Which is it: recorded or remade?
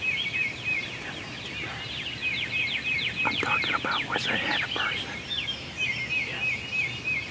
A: recorded